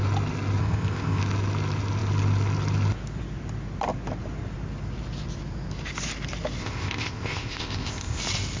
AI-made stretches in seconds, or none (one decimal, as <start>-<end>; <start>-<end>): 0.6-1.2; 6.6-8.2